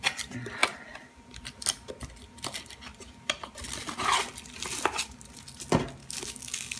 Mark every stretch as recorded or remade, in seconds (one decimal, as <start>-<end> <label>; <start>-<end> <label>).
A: 0.0-6.0 recorded; 6.0-6.8 remade